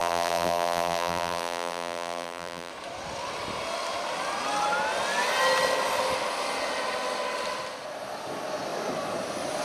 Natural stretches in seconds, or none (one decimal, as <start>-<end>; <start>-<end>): 2.7-9.6